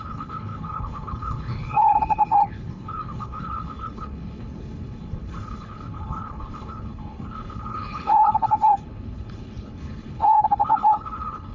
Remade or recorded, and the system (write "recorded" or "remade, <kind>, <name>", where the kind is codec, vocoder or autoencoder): remade, codec, HILCodec